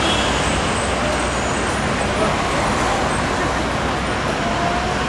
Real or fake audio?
real